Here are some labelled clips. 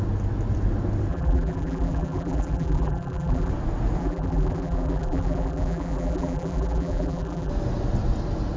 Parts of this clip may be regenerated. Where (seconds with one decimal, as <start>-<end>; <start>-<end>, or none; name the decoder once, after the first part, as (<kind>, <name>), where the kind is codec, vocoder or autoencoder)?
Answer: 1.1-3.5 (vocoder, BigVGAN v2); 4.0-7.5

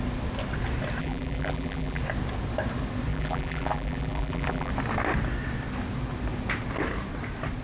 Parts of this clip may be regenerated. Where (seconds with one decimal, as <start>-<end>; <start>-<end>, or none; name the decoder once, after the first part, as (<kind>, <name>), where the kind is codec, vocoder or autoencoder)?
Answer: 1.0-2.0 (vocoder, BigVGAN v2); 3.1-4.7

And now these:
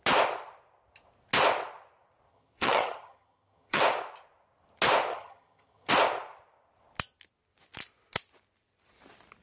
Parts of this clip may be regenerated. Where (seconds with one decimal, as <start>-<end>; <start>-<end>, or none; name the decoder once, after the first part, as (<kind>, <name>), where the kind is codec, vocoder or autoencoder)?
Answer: 2.3-3.8 (vocoder, HiFi-GAN); 5.1-5.9

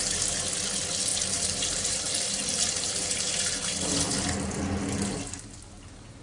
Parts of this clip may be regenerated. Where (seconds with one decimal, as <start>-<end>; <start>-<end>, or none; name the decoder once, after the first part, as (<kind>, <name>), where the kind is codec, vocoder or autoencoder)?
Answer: 1.1-3.9 (vocoder, BigVGAN v2)